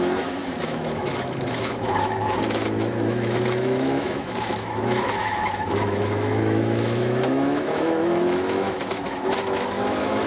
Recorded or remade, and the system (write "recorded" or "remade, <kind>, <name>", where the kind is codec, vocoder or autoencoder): remade, autoencoder, DAC-VAE